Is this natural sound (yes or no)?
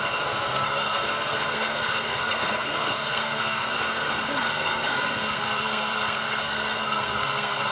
no